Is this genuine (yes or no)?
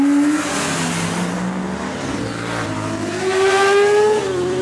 yes